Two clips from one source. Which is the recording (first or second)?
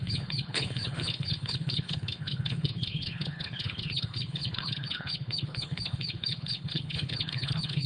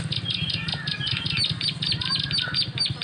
second